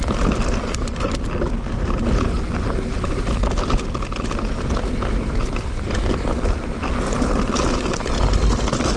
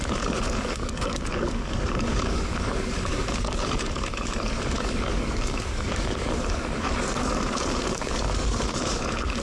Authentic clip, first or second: first